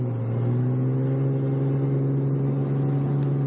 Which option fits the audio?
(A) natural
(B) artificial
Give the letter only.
A